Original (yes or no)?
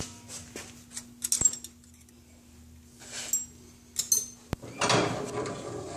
yes